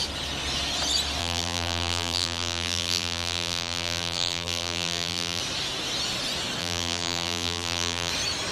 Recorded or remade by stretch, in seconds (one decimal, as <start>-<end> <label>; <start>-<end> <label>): 0.0-1.2 recorded; 1.2-5.4 remade; 5.4-6.6 recorded; 6.6-8.1 remade; 8.1-8.5 recorded